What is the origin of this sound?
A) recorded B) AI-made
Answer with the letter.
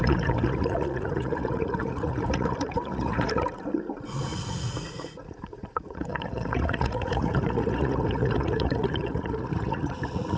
B